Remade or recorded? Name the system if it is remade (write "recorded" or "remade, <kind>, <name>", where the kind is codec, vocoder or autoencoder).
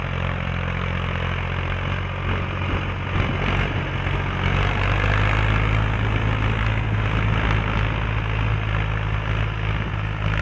recorded